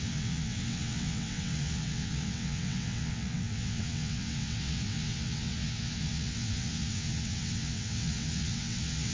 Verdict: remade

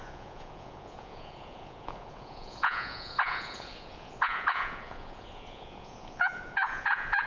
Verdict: remade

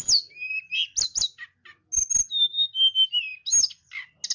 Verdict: recorded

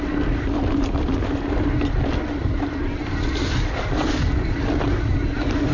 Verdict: recorded